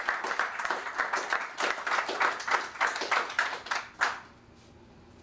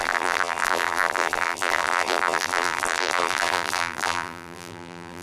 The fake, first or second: second